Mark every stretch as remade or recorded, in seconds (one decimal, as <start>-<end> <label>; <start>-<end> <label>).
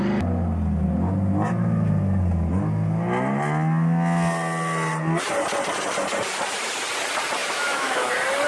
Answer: 0.0-7.4 recorded; 7.4-8.1 remade; 8.1-8.5 recorded